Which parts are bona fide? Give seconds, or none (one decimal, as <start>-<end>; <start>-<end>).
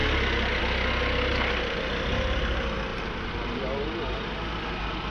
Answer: 0.0-1.3; 1.9-2.9; 3.6-5.1